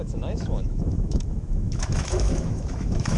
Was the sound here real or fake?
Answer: fake